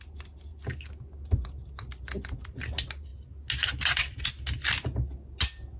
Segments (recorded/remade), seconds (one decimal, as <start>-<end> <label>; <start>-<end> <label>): 0.0-5.8 recorded